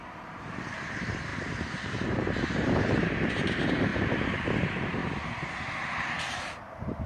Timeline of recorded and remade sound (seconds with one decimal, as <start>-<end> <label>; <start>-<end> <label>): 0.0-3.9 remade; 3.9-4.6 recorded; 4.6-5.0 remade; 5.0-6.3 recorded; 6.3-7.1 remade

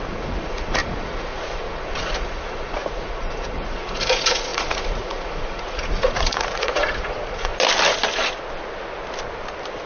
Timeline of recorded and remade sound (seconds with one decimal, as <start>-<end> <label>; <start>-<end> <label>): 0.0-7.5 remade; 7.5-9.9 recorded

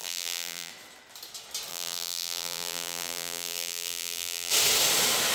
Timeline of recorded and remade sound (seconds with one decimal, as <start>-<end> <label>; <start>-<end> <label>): 0.0-0.7 remade; 0.7-1.7 recorded; 1.7-4.5 remade; 4.5-5.3 recorded